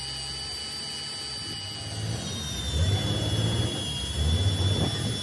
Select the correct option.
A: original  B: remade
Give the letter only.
A